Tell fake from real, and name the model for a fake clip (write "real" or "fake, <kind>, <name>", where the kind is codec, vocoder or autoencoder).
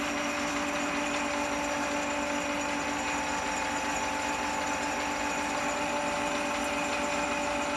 real